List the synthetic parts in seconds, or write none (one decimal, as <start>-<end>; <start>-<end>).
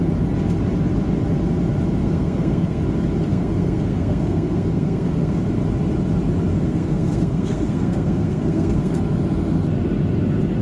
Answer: 2.0-2.8; 3.3-5.4; 6.5-9.0